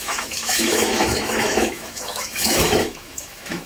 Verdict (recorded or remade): remade